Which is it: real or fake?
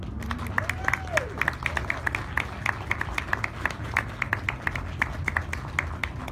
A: real